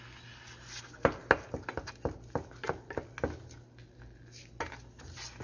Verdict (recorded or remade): recorded